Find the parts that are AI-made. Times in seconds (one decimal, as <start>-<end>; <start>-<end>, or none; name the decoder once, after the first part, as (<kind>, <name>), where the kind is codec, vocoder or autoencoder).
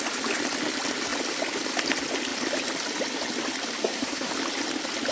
3.8-4.3 (codec, SNAC)